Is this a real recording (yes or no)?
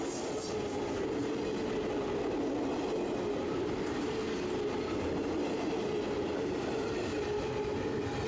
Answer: yes